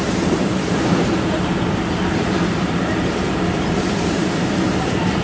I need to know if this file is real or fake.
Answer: fake